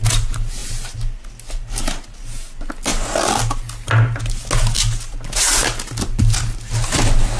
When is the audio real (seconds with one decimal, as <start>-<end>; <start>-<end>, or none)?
0.0-7.4